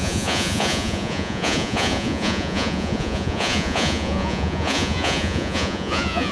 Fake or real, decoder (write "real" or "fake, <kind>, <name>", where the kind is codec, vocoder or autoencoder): fake, vocoder, Vocos